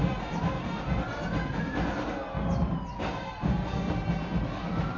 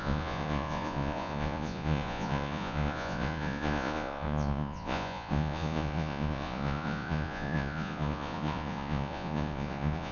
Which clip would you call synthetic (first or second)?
second